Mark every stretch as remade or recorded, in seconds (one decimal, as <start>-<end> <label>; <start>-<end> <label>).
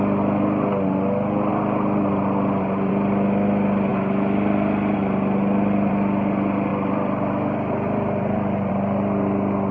0.0-1.5 recorded; 1.5-2.9 remade; 2.9-6.7 recorded; 6.7-8.7 remade; 8.7-9.7 recorded